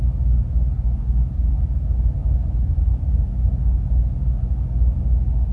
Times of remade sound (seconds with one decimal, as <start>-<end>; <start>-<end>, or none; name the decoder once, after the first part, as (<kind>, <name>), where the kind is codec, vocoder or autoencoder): none